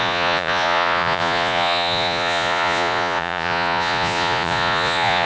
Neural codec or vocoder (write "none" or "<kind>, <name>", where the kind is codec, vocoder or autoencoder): vocoder, Vocos